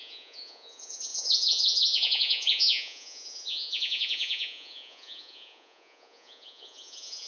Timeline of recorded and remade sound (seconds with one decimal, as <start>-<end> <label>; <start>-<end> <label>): 0.0-7.3 remade